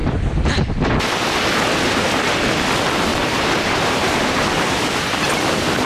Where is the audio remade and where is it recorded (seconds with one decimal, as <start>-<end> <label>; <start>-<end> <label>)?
0.0-0.6 remade; 0.6-3.1 recorded; 3.1-4.9 remade; 4.9-5.8 recorded